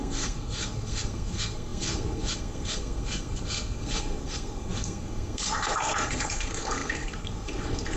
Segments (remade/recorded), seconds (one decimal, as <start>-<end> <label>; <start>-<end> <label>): 0.0-8.0 remade